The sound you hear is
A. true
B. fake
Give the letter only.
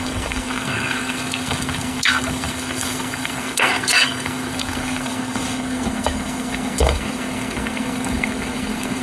B